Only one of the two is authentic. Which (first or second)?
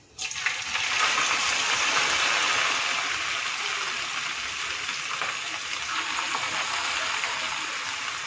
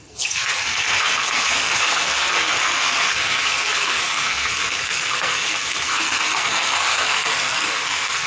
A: first